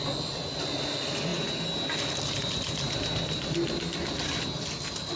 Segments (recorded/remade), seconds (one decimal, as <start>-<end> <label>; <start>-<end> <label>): 0.0-5.2 recorded